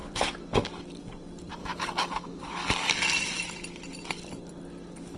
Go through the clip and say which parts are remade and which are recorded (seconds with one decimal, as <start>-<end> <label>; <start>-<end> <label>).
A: 0.0-1.6 recorded; 1.6-2.9 remade; 2.9-5.2 recorded